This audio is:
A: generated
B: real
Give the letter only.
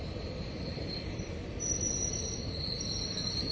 B